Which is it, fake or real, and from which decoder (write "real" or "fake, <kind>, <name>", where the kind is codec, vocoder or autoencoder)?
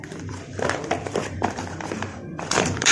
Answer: fake, vocoder, BigVGAN v2